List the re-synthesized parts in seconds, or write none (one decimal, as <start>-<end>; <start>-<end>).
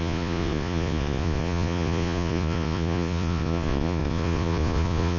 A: 0.0-5.2